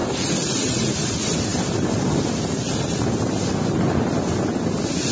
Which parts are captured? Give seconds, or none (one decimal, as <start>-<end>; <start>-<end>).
0.0-5.1